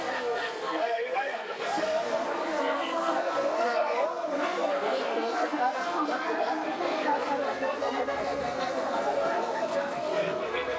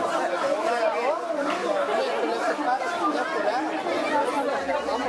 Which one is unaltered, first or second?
second